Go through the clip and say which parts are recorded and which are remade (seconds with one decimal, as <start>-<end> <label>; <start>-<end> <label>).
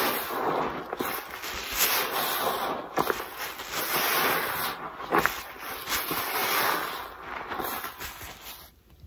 0.0-9.1 recorded